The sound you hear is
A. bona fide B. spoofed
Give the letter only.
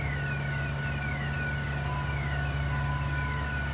A